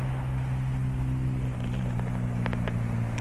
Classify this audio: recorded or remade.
recorded